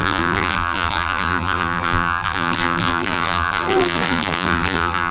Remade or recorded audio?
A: remade